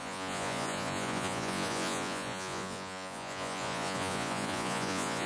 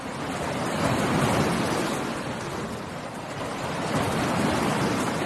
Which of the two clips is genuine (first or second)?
second